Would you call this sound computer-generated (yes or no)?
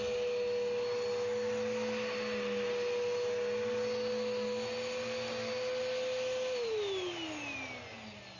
no